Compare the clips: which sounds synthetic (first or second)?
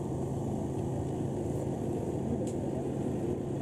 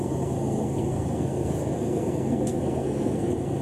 second